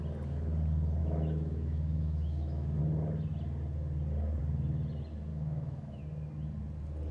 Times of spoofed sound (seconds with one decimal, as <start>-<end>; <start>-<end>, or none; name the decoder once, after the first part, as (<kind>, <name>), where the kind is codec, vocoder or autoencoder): 1.0-2.8 (autoencoder, DAC-VAE); 5.3-6.0